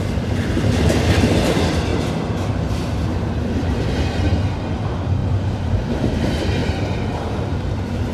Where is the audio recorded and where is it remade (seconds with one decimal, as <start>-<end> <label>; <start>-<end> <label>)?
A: 0.0-1.9 remade; 1.9-4.1 recorded; 4.1-6.6 remade; 6.6-7.3 recorded; 7.3-8.1 remade